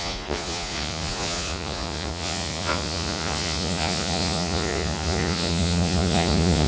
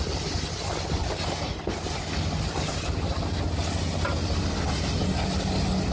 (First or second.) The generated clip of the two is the first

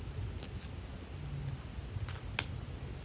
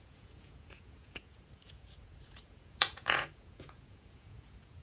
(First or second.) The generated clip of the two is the second